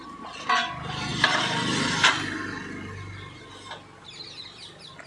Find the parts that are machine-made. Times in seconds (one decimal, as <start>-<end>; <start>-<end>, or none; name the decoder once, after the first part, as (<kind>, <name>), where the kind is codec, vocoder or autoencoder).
1.1-2.1 (vocoder, BigVGAN v2)